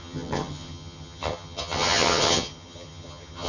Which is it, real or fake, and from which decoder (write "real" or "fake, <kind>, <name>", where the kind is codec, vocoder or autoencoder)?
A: fake, vocoder, HiFi-GAN